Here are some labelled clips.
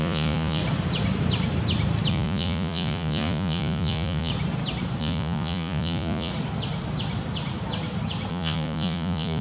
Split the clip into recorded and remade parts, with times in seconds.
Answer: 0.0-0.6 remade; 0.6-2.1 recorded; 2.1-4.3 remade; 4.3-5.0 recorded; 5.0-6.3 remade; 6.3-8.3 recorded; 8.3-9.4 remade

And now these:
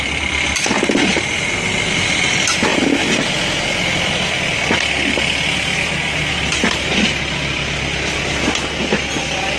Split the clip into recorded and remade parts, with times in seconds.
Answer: 0.0-9.6 recorded

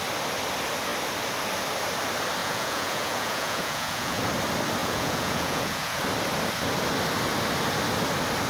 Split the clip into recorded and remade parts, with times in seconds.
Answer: 0.0-2.4 recorded; 2.4-4.2 remade; 4.2-4.8 recorded; 4.8-6.0 remade; 6.0-8.5 recorded

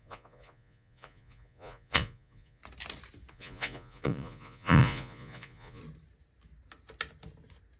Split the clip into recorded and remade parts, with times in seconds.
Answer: 0.0-2.6 remade; 2.6-3.3 recorded; 3.3-5.8 remade; 5.8-7.8 recorded

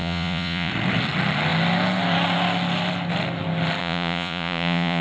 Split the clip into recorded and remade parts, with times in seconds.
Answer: 0.0-0.7 remade; 0.7-3.8 recorded; 3.8-5.0 remade

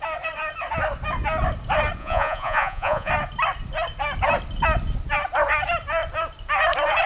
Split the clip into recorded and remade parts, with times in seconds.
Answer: 0.0-2.0 recorded; 2.0-3.1 remade; 3.1-7.1 recorded

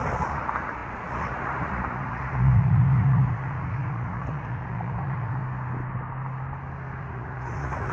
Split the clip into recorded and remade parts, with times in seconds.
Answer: 0.0-5.4 remade; 5.4-7.0 recorded; 7.0-7.9 remade

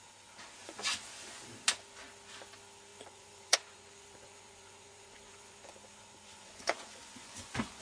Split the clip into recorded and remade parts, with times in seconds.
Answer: 0.0-0.6 recorded; 0.6-1.4 remade; 1.4-2.9 recorded; 2.9-7.8 remade